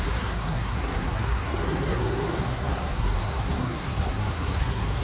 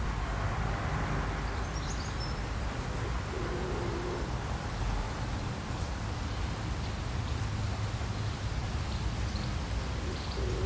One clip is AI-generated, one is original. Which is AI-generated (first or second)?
first